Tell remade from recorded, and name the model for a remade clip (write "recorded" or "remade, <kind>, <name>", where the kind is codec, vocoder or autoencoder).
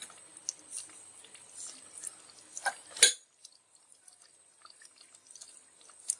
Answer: recorded